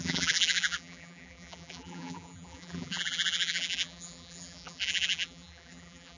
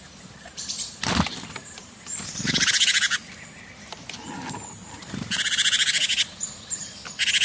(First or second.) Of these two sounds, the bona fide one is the second